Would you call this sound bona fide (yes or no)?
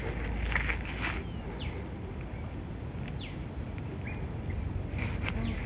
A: yes